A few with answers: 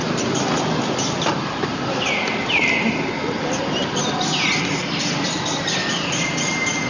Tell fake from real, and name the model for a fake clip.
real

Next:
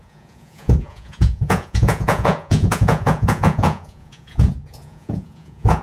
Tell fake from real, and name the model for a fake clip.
fake, vocoder, Vocos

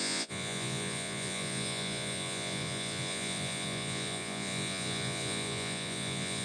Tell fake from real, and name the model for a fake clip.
fake, vocoder, Vocos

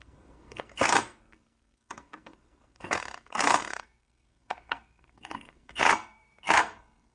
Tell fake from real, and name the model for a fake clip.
fake, codec, SNAC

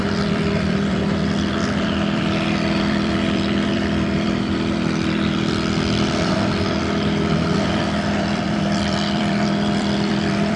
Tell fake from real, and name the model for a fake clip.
fake, vocoder, BigVGAN v2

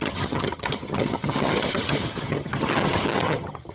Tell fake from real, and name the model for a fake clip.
fake, vocoder, HiFi-GAN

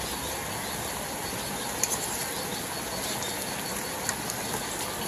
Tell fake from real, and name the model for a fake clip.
real